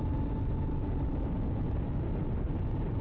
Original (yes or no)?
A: yes